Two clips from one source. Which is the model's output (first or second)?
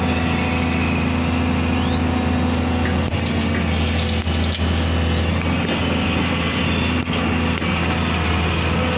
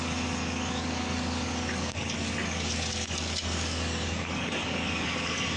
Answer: second